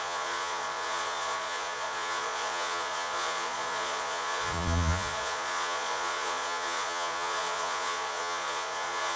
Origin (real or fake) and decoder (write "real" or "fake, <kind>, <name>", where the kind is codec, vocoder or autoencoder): fake, vocoder, Vocos